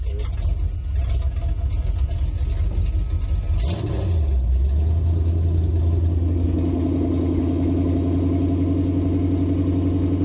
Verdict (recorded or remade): recorded